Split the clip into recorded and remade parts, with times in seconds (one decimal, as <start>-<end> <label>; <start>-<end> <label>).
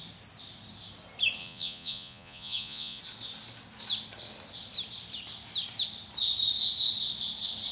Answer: 0.0-1.4 recorded; 1.4-3.0 remade; 3.0-7.7 recorded